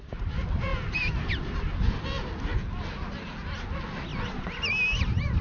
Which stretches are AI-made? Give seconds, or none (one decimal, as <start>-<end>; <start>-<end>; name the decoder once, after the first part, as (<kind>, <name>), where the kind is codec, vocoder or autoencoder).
none